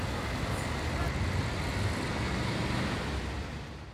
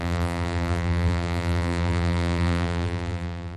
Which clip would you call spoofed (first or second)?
second